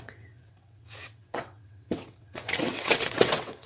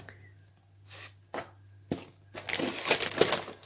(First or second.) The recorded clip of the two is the second